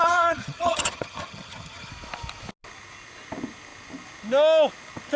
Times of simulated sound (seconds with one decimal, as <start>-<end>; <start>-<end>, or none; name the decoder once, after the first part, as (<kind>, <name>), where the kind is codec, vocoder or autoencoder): 0.0-1.9 (vocoder, HiFi-GAN)